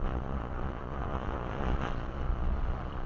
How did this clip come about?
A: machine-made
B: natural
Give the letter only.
A